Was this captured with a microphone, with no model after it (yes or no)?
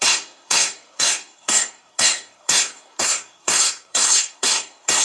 no